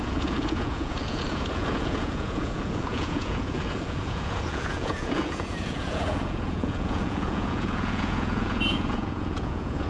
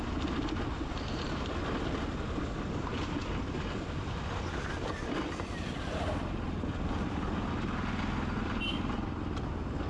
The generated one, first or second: first